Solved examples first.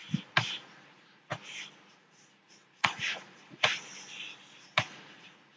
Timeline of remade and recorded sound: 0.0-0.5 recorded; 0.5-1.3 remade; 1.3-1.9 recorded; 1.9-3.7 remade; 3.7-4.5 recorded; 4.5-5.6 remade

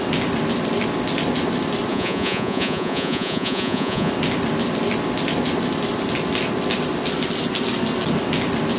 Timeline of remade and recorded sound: 0.0-1.9 recorded; 1.9-4.1 remade; 4.1-8.8 recorded

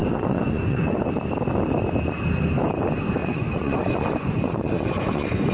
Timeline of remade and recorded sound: 0.0-1.0 remade; 1.0-3.2 recorded; 3.2-5.5 remade

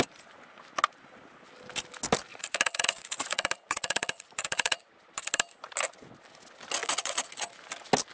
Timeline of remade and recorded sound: 0.0-2.3 recorded; 2.3-4.9 remade; 4.9-6.8 recorded; 6.8-7.3 remade; 7.3-8.1 recorded

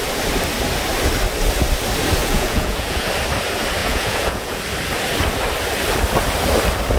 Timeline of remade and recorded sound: 0.0-2.2 recorded; 2.2-3.1 remade; 3.1-3.8 recorded; 3.8-4.6 remade; 4.6-7.0 recorded

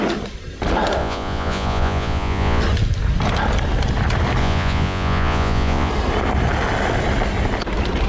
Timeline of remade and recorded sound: 0.0-1.0 recorded; 1.0-2.6 remade; 2.6-4.4 recorded; 4.4-5.9 remade; 5.9-8.1 recorded

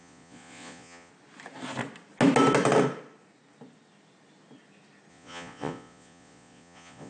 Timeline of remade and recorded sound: 0.0-1.1 remade; 1.1-5.1 recorded; 5.1-7.1 remade

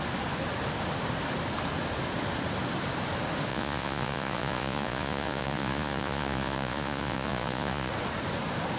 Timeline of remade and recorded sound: 0.0-3.5 recorded; 3.5-7.9 remade; 7.9-8.8 recorded